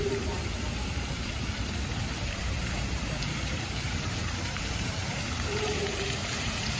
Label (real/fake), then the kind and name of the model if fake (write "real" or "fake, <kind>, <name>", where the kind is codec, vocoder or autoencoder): fake, vocoder, BigVGAN v2